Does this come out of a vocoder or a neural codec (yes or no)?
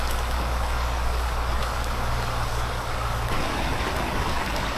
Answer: yes